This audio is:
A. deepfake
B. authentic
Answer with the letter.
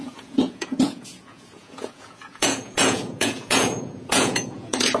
A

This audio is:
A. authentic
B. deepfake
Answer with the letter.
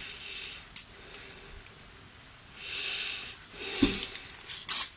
A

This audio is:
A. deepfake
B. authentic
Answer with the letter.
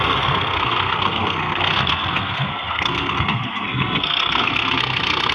A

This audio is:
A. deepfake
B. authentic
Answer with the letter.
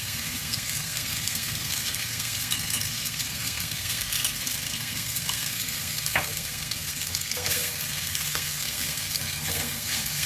A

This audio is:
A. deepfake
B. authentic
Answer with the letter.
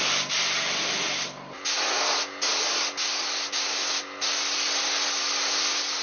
B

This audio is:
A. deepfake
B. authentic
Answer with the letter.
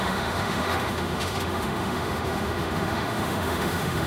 A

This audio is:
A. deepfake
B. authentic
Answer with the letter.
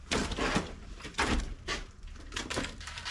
A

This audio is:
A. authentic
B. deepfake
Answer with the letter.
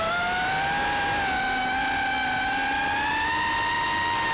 A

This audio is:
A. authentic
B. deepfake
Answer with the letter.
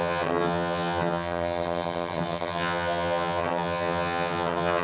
B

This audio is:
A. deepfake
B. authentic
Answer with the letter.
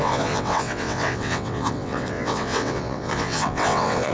A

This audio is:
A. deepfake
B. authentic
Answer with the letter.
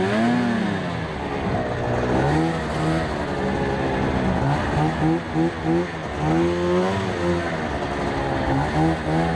B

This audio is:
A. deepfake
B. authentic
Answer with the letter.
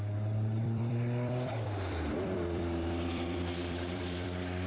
A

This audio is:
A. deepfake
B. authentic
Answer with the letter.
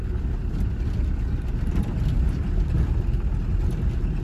B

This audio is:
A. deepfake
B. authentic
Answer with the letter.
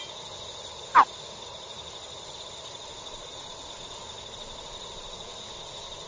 B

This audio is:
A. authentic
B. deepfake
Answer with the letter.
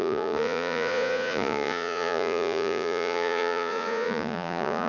B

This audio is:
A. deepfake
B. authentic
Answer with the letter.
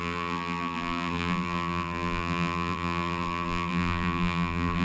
A